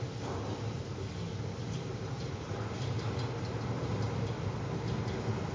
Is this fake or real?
real